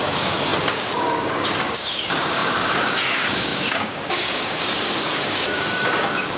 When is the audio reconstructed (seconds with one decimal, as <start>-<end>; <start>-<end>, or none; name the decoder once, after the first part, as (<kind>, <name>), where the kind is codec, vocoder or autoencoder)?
0.0-6.4 (codec, DAC)